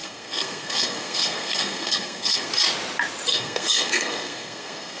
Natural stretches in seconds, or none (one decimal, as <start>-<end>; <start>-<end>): 2.5-3.3